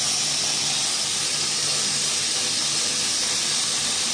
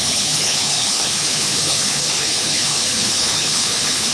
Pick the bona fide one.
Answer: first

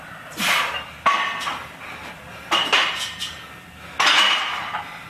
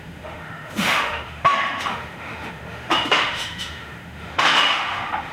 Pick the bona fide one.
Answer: first